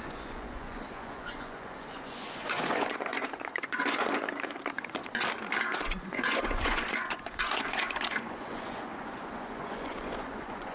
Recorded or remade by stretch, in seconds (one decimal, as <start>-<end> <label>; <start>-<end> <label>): 0.0-5.0 remade; 5.0-5.8 recorded; 5.8-10.7 remade